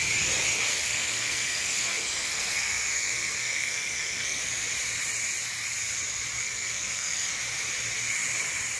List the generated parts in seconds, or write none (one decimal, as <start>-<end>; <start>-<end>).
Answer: 0.7-4.4; 6.4-7.4